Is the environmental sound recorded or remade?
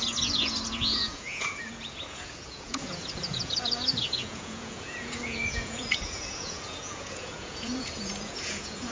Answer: remade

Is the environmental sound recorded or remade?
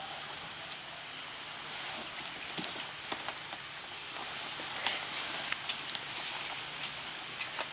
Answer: recorded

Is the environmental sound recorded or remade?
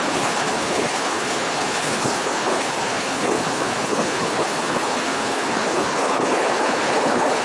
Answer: remade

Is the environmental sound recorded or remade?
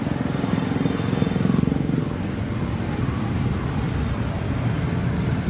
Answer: recorded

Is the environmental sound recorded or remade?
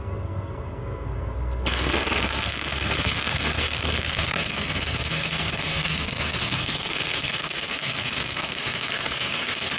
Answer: remade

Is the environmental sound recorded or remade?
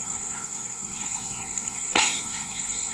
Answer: remade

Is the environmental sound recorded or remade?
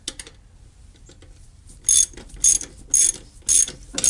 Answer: recorded